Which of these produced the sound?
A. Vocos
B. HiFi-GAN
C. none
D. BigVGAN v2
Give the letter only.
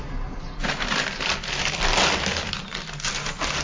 C